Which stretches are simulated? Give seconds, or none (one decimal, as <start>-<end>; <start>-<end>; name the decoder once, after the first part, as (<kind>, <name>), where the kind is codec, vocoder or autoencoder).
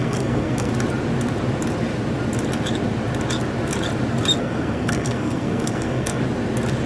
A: 0.0-0.7 (codec, SNAC); 4.4-6.2